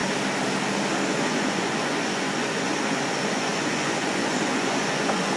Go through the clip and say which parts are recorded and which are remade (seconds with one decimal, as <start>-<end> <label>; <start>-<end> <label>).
0.0-1.1 recorded; 1.1-5.4 remade